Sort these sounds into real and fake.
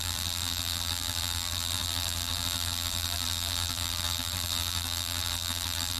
fake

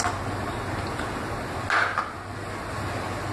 real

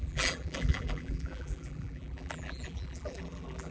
fake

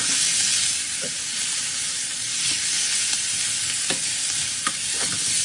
real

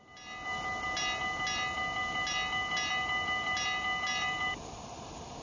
real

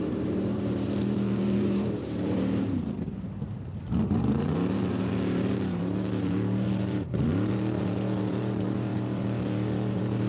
fake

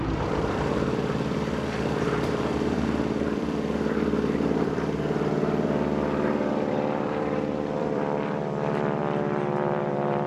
fake